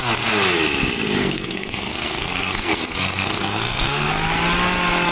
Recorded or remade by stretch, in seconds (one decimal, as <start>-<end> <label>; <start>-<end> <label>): 0.0-1.2 recorded; 1.2-4.1 remade; 4.1-5.1 recorded